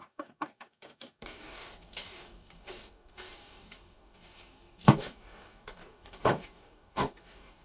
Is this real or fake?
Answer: fake